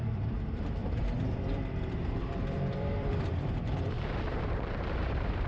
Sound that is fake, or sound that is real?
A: fake